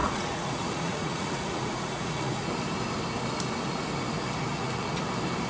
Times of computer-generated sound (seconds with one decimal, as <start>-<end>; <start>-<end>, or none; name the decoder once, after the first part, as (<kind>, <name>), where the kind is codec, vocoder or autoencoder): 0.0-2.5 (vocoder, Vocos); 4.5-5.0